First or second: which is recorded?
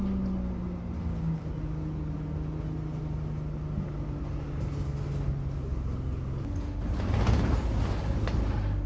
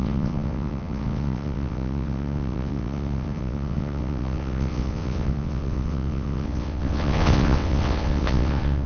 first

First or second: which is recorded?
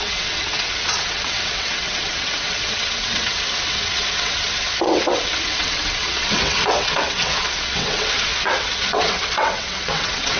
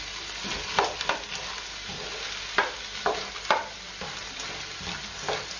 second